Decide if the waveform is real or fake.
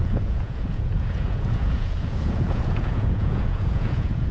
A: fake